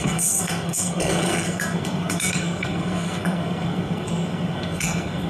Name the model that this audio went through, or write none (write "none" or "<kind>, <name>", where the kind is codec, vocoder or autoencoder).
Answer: codec, SNAC